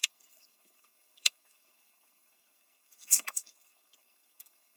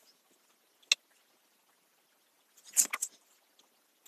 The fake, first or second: first